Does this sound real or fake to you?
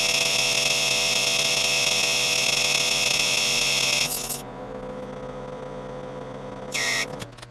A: real